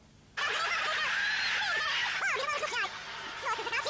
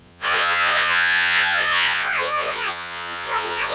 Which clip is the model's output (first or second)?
second